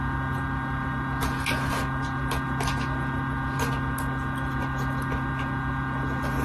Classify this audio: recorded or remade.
recorded